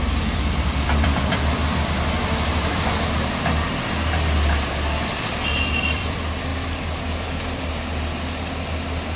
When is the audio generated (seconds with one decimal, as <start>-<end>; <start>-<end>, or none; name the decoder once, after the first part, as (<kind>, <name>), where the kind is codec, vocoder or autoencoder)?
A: 0.0-1.6 (vocoder, BigVGAN v2); 5.6-6.5

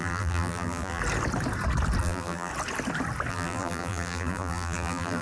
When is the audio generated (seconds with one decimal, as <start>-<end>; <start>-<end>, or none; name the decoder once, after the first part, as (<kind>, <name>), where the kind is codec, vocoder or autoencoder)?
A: 0.0-1.0 (vocoder, BigVGAN v2); 2.0-2.5; 3.3-5.2